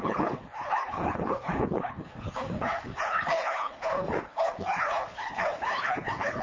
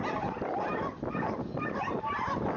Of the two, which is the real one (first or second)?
second